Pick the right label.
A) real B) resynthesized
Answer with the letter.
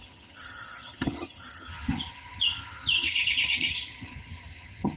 B